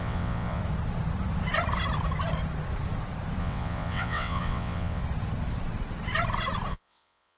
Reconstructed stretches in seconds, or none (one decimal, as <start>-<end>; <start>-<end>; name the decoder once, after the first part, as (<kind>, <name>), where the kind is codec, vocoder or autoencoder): 0.0-0.6 (vocoder, WaveNeXt); 3.4-5.0; 6.7-7.4